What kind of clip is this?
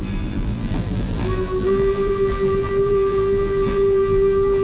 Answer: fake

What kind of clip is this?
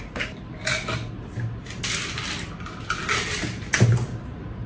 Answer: real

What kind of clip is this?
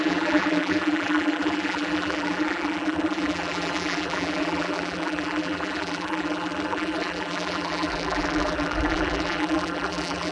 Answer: fake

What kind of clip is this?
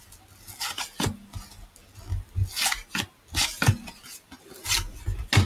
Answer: real